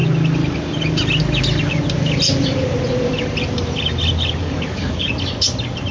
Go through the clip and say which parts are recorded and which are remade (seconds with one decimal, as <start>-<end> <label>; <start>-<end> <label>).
0.0-4.4 recorded; 4.4-5.1 remade; 5.1-5.9 recorded